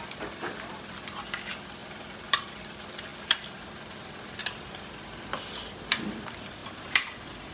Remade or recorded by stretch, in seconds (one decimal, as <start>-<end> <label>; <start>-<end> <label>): 0.0-1.8 recorded; 1.8-2.5 remade; 2.5-6.6 recorded; 6.6-7.5 remade